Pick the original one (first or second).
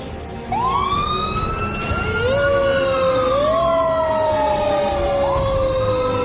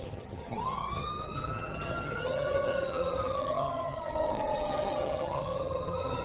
first